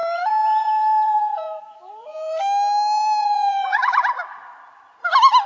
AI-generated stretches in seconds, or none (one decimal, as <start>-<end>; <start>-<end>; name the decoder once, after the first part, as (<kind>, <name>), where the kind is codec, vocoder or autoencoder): 0.0-2.4 (vocoder, Vocos); 3.2-4.0